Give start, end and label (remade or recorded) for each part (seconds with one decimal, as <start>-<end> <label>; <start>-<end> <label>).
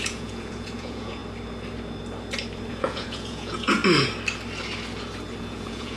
0.0-1.2 remade; 1.2-2.7 recorded; 2.7-3.8 remade; 3.8-5.4 recorded; 5.4-6.0 remade